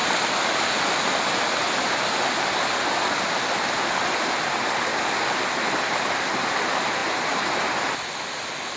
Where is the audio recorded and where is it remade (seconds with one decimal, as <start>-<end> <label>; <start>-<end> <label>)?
0.0-8.8 recorded